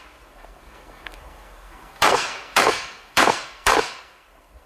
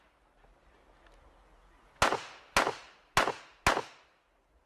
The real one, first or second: second